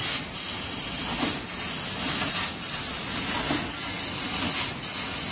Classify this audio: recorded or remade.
recorded